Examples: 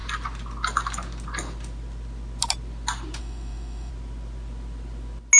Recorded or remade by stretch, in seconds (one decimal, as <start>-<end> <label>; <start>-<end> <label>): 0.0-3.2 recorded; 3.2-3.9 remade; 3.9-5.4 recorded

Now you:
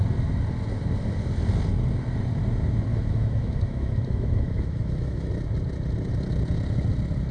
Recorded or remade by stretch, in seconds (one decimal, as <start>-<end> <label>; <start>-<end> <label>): 0.0-2.9 recorded; 2.9-5.3 remade; 5.3-7.3 recorded

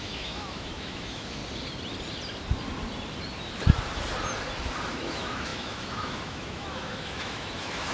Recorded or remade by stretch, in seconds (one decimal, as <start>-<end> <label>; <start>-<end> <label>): 0.0-1.4 remade; 1.4-4.9 recorded; 4.9-7.9 remade